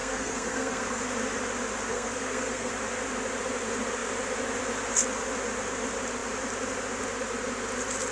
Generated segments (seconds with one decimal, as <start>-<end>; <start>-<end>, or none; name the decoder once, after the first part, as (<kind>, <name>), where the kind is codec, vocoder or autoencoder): 0.0-1.0 (codec, SNAC); 1.9-2.7